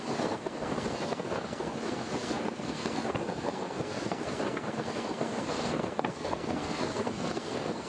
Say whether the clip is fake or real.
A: fake